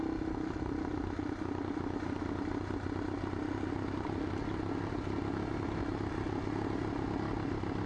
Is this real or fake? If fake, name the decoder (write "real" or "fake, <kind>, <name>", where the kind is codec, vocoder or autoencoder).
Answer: real